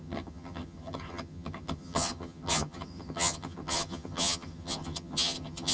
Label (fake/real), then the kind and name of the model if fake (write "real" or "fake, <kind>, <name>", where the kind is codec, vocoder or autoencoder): fake, vocoder, HiFi-GAN